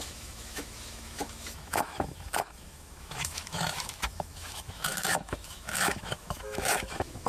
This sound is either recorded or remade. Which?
remade